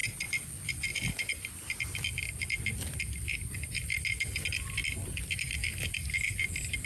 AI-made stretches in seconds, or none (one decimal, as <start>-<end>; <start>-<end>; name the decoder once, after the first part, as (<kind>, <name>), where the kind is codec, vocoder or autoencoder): none